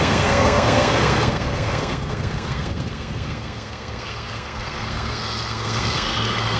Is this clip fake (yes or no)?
yes